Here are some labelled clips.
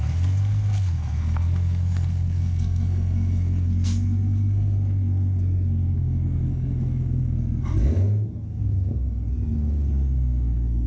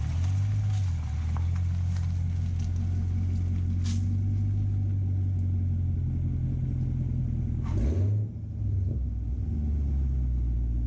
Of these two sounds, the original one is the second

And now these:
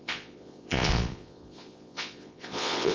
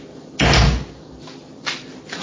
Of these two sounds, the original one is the second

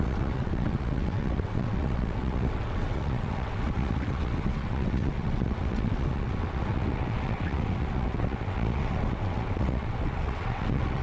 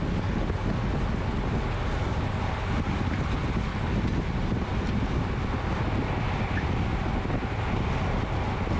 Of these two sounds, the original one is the second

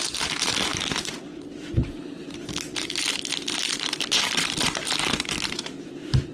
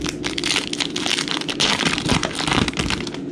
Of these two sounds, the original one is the second